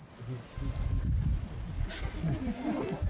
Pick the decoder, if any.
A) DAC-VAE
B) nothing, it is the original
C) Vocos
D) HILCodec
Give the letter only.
B